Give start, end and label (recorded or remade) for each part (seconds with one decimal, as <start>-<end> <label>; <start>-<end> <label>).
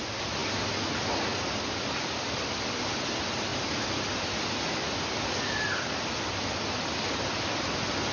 0.0-8.1 recorded